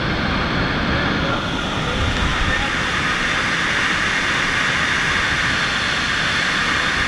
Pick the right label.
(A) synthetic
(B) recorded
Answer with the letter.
B